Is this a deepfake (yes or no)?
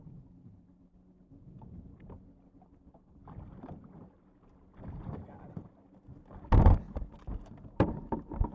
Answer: no